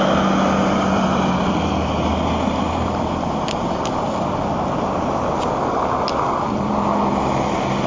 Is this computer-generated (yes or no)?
no